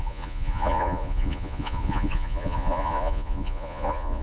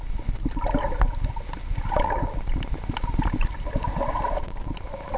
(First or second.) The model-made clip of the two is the first